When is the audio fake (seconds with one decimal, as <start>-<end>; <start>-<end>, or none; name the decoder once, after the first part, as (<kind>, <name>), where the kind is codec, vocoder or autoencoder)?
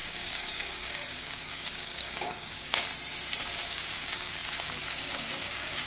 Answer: 0.0-2.9 (codec, DAC); 3.4-5.9